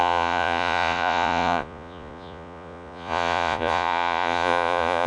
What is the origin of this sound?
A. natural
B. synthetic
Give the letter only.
B